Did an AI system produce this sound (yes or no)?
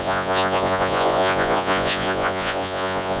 yes